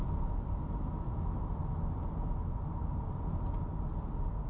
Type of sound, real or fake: real